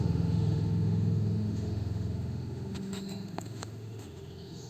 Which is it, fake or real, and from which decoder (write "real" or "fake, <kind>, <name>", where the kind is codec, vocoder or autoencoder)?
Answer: fake, autoencoder, DAC-VAE